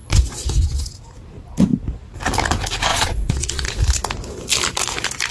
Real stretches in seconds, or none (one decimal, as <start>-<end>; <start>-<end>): 0.8-2.9; 3.7-5.3